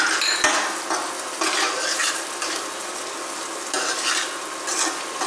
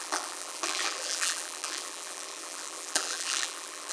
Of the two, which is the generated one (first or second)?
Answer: second